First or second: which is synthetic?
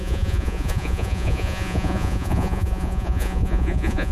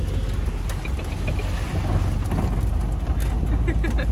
first